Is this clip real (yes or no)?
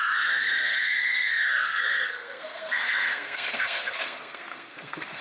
no